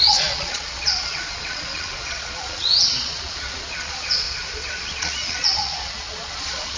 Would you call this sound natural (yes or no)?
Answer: no